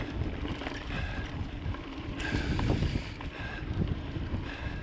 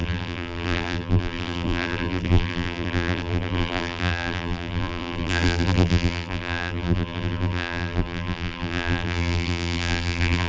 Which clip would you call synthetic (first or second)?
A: second